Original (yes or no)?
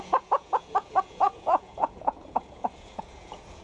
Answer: no